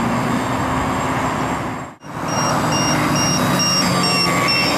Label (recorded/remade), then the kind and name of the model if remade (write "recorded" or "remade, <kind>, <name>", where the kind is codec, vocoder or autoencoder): recorded